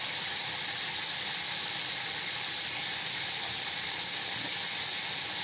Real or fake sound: fake